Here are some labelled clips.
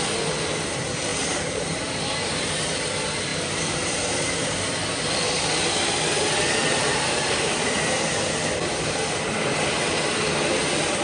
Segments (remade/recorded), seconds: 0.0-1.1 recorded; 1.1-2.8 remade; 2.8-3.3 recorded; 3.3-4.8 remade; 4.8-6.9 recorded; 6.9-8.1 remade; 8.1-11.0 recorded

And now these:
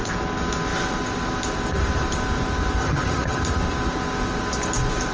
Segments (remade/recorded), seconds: 0.0-2.8 recorded; 2.8-3.4 remade; 3.4-5.1 recorded

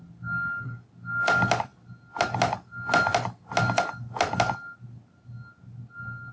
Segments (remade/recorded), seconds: 0.0-6.3 recorded

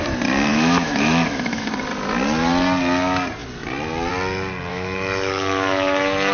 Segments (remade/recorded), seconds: 0.0-0.5 recorded; 0.5-1.7 remade; 1.7-4.7 recorded; 4.7-6.3 remade

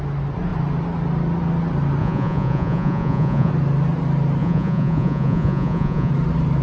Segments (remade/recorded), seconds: 0.0-2.0 recorded; 2.0-3.5 remade; 3.5-4.4 recorded; 4.4-6.1 remade; 6.1-6.6 recorded